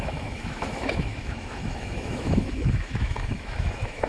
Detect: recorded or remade remade